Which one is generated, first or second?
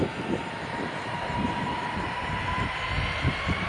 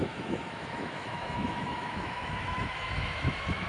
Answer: second